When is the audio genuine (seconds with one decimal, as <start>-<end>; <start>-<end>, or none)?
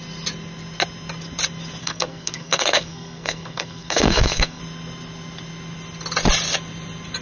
0.0-1.8; 4.6-7.2